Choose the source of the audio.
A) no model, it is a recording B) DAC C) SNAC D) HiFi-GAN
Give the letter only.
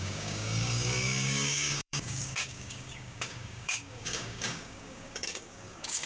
B